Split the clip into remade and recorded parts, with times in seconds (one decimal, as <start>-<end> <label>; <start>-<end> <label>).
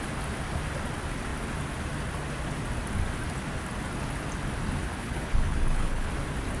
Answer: 0.0-4.9 recorded; 4.9-6.1 remade; 6.1-6.6 recorded